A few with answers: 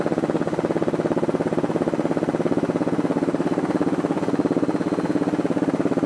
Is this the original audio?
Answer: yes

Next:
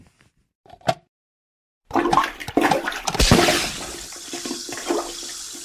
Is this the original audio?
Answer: no